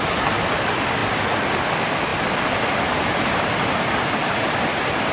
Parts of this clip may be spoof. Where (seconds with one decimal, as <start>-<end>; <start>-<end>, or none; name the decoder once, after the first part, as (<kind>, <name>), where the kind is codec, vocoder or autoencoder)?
0.0-5.1 (vocoder, BigVGAN v2)